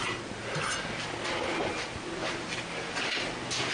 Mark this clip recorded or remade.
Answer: recorded